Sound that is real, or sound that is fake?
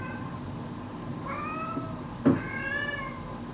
real